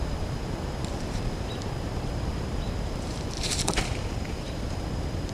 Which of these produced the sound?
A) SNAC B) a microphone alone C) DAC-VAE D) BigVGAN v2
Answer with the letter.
D